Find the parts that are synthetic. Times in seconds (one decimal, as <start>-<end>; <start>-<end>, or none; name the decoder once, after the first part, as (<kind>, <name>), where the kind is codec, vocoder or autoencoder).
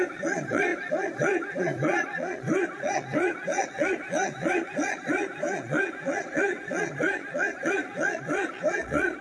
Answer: 0.0-9.2 (vocoder, Vocos)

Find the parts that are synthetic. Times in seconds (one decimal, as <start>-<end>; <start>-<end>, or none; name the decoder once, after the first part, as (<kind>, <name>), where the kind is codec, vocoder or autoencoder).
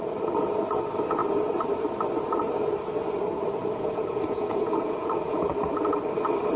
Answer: 3.6-5.5 (vocoder, Vocos)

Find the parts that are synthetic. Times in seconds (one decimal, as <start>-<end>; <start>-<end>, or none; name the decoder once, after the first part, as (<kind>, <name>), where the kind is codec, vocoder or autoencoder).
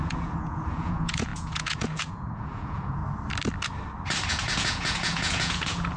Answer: 0.0-3.0 (vocoder, Vocos); 4.3-6.0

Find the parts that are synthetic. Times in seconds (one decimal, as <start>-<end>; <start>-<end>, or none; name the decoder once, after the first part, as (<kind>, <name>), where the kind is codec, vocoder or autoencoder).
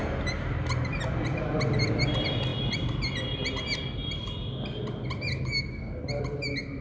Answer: none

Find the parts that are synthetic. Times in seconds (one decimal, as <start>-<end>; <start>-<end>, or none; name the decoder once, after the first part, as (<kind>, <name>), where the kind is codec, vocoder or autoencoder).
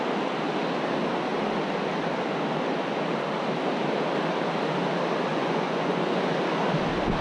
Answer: 5.3-6.4 (vocoder, Vocos)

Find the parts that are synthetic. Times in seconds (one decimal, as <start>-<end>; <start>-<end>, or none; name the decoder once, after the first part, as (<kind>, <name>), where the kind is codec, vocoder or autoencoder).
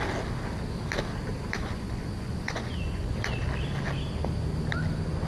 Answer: 1.6-3.1 (vocoder, Vocos)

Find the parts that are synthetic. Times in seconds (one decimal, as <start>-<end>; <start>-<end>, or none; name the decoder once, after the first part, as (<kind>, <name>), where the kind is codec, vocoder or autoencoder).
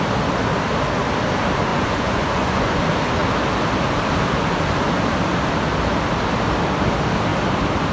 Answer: 1.7-2.8 (vocoder, Vocos)